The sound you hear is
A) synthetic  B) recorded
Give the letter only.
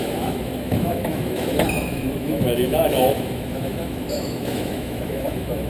A